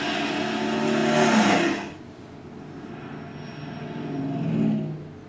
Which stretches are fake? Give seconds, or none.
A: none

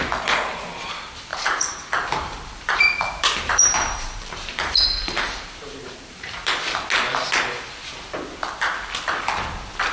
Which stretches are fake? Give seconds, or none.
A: 1.3-6.5

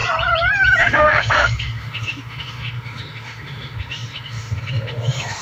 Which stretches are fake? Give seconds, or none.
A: 0.8-5.4